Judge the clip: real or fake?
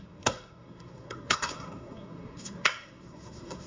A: fake